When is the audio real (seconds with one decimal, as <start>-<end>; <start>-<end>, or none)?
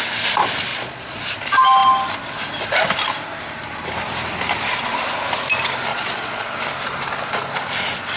0.0-0.7; 1.2-5.9; 6.5-8.2